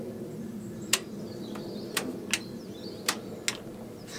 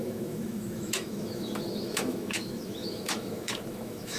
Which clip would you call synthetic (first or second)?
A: second